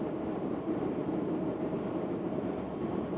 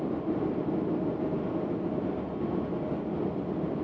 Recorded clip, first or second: second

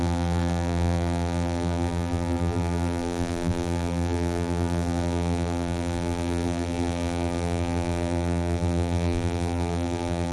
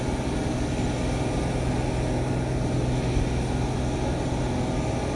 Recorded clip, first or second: second